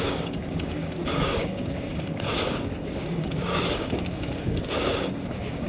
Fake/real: fake